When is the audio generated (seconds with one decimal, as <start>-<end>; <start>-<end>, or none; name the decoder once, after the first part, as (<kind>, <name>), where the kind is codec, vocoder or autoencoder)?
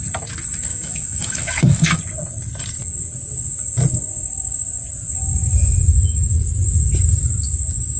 0.7-2.0 (autoencoder, DAC-VAE)